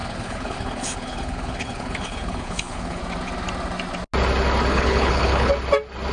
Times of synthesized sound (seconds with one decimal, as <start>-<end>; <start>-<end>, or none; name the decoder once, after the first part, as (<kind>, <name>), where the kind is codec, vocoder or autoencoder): 0.0-3.0 (codec, HILCodec); 4.7-5.5